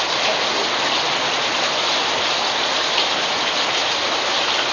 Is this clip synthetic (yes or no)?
no